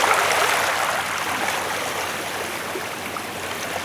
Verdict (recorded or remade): recorded